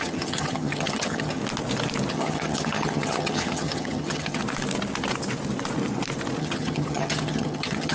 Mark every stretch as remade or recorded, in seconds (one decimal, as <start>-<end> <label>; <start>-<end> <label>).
0.0-1.4 remade; 1.4-2.1 recorded; 2.1-4.4 remade; 4.4-6.4 recorded; 6.4-7.9 remade